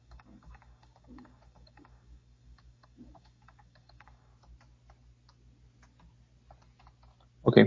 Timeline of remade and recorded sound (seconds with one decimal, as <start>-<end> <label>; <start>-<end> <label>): 0.0-4.3 remade; 4.3-7.7 recorded